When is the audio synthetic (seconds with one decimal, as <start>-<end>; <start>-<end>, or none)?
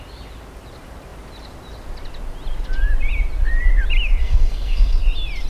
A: 4.2-5.0